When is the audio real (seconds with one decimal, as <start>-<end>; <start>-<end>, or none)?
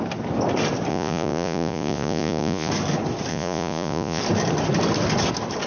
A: 0.0-0.9; 2.7-3.3; 4.2-5.7